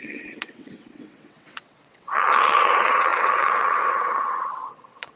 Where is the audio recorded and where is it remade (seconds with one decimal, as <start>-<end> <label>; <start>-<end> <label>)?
0.0-5.2 remade